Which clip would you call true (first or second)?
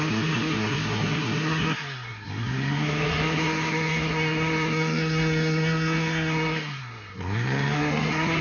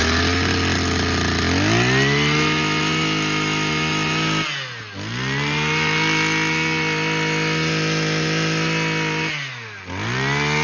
second